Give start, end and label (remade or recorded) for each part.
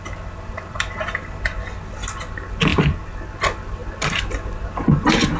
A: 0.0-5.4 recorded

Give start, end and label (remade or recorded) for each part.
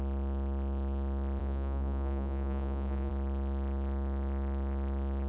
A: 0.0-1.4 recorded; 1.4-3.1 remade; 3.1-5.3 recorded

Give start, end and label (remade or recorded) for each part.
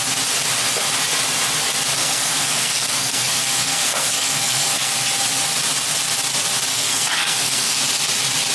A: 0.0-2.0 recorded; 2.0-4.9 remade; 4.9-6.7 recorded; 6.7-7.8 remade; 7.8-8.5 recorded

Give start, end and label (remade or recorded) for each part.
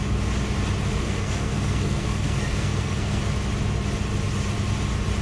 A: 0.0-1.0 recorded; 1.0-3.2 remade; 3.2-5.2 recorded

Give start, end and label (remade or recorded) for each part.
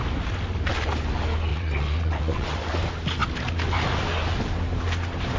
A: 0.0-1.5 recorded; 1.5-2.8 remade; 2.8-5.4 recorded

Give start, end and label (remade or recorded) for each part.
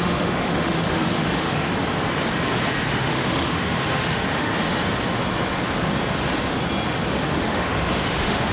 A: 0.0-1.7 remade; 1.7-2.9 recorded; 2.9-4.5 remade; 4.5-7.1 recorded; 7.1-8.5 remade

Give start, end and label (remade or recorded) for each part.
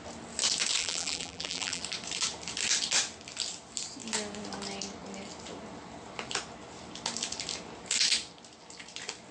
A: 0.0-0.8 recorded; 0.8-1.8 remade; 1.8-9.3 recorded